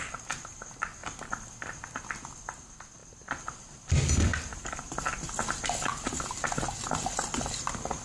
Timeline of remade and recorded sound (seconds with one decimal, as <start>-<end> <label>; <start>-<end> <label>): 0.0-5.9 recorded; 5.9-6.4 remade; 6.4-8.0 recorded